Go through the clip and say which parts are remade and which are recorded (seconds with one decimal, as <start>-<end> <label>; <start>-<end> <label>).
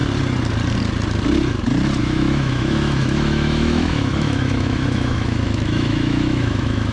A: 0.0-2.0 recorded; 2.0-6.9 remade